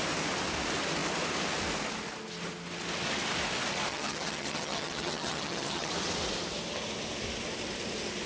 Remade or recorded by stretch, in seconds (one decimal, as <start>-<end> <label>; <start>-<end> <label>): 0.0-3.9 recorded; 3.9-5.9 remade; 5.9-8.3 recorded